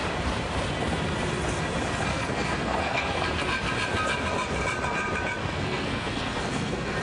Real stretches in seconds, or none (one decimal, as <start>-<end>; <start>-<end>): 0.0-2.1; 3.2-5.4

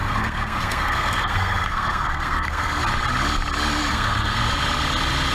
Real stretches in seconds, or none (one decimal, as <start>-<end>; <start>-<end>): 2.8-3.9; 4.4-5.3